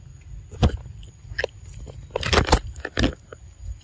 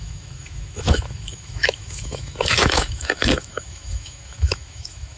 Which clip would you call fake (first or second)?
second